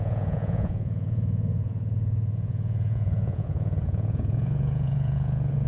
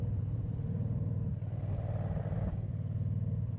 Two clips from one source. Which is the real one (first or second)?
second